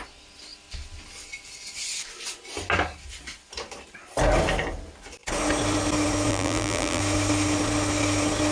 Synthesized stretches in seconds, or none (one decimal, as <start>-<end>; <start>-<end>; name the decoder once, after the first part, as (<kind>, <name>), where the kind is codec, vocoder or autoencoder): 6.3-7.0 (vocoder, BigVGAN v2)